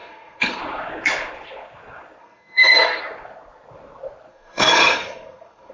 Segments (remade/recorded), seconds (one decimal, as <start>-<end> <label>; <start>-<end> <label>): 0.0-0.6 remade; 0.6-2.2 recorded; 2.2-3.0 remade; 3.0-4.3 recorded; 4.3-5.7 remade